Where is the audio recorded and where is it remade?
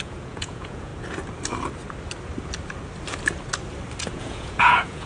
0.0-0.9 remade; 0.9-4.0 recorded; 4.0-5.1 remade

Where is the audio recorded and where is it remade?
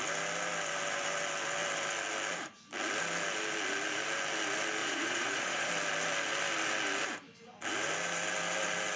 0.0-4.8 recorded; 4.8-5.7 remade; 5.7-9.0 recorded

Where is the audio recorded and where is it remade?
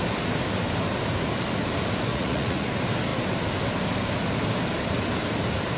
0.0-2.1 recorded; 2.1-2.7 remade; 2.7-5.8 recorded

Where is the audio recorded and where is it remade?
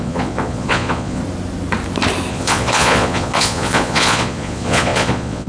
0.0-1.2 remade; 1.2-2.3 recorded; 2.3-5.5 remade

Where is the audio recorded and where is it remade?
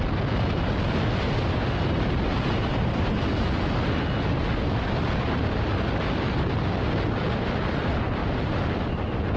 0.0-9.4 recorded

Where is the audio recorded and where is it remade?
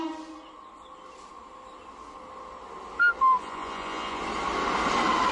0.0-3.4 recorded; 3.4-4.2 remade; 4.2-5.3 recorded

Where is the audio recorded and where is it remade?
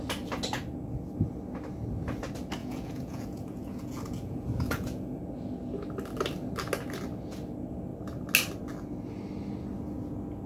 0.0-2.6 recorded; 2.6-5.2 remade; 5.2-10.5 recorded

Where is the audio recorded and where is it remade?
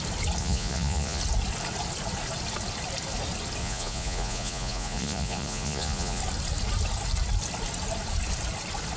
0.0-0.4 recorded; 0.4-1.2 remade; 1.2-3.6 recorded; 3.6-6.2 remade; 6.2-9.0 recorded